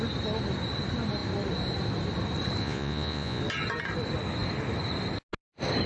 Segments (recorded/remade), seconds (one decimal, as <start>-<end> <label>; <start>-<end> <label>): 0.0-2.6 recorded; 2.6-3.4 remade; 3.4-5.9 recorded